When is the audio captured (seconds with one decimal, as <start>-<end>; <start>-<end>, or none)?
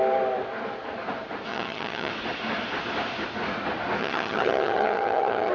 0.0-1.5; 2.1-4.0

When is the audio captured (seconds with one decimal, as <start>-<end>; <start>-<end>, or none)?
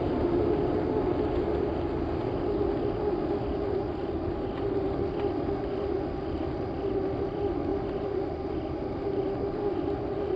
0.0-10.4